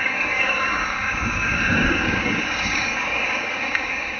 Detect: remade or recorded remade